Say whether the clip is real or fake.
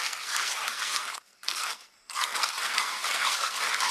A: fake